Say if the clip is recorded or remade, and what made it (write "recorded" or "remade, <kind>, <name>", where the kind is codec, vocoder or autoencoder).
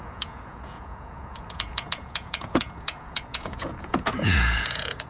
remade, vocoder, Vocos